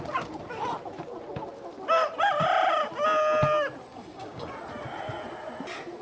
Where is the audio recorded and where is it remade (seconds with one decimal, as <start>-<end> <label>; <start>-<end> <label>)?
0.0-3.9 recorded; 3.9-4.5 remade; 4.5-6.0 recorded